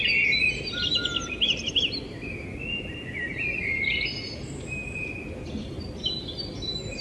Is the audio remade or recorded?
recorded